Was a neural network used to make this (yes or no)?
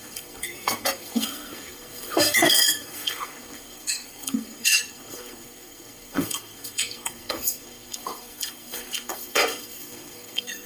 yes